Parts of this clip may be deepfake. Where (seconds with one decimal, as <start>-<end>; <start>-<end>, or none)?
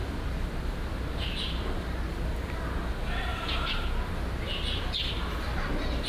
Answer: none